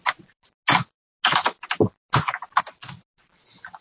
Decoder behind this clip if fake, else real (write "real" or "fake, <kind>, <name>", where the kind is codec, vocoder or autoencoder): real